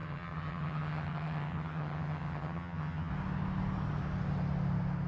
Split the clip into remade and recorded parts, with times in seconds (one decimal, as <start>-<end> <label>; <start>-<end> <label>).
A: 0.0-3.1 remade; 3.1-5.1 recorded